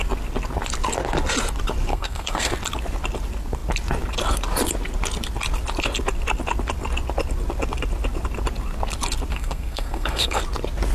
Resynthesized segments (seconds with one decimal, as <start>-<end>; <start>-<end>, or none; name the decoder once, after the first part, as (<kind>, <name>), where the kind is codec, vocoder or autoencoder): 1.9-2.5 (codec, SNAC); 9.3-10.4

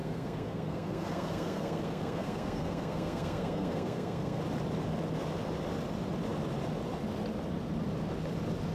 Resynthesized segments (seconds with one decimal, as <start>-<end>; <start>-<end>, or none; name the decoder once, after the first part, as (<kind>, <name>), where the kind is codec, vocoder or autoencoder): 0.0-4.4 (codec, SNAC)

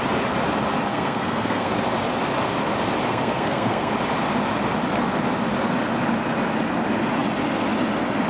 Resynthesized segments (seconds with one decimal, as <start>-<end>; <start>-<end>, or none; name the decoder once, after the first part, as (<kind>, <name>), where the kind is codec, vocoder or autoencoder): 0.9-1.7 (codec, SNAC); 3.1-3.9

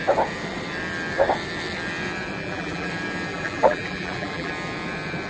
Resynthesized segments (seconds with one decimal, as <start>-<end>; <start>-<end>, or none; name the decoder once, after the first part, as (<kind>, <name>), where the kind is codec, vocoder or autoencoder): 2.4-2.9 (vocoder, BigVGAN v2); 3.3-4.5